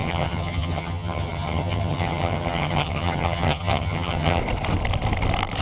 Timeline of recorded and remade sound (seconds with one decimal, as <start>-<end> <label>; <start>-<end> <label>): 0.0-4.4 remade; 4.4-5.6 recorded